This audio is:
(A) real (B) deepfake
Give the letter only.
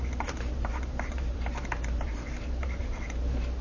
B